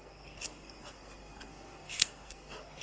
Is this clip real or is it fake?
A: fake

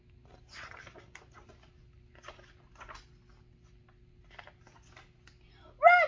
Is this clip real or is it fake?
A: real